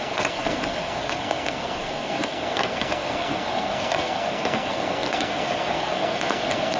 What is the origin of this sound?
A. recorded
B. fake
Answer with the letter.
B